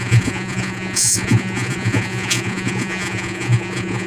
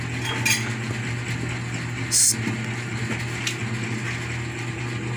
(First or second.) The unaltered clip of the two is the second